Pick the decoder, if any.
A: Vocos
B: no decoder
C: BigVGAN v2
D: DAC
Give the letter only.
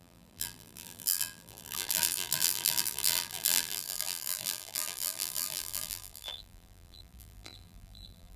C